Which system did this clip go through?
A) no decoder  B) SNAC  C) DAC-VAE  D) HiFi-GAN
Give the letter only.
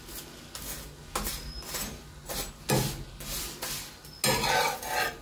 A